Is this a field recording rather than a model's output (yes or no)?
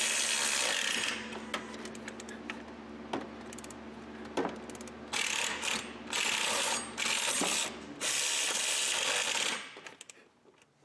yes